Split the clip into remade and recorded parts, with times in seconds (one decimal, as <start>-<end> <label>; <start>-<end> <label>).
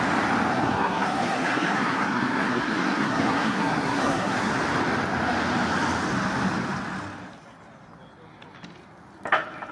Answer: 0.0-0.5 recorded; 0.5-4.5 remade; 4.5-9.7 recorded